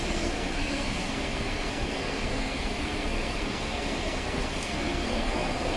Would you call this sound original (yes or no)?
no